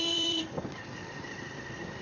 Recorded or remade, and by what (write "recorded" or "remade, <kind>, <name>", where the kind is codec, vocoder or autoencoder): remade, vocoder, BigVGAN v2